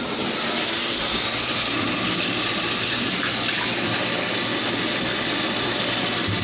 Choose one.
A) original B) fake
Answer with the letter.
A